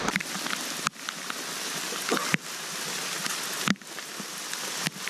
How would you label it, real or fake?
real